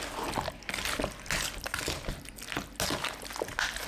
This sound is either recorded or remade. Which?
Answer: recorded